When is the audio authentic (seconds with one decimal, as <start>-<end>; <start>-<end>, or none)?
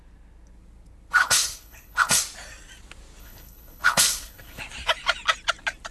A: 0.0-1.2; 2.2-3.2; 4.6-5.9